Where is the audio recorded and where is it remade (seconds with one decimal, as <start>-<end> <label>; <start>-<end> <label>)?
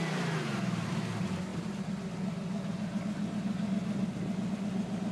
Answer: 0.0-5.1 recorded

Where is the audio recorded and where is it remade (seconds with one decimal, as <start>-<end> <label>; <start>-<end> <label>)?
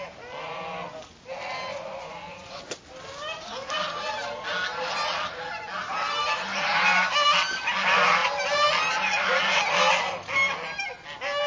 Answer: 0.0-1.7 recorded; 1.7-2.6 remade; 2.6-11.5 recorded